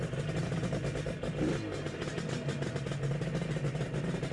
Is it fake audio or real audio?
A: real